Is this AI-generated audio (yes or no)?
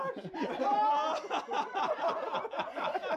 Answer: no